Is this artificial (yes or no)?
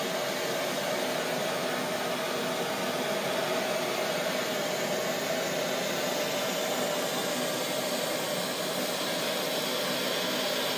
no